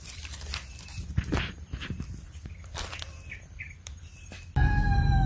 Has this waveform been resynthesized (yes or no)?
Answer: yes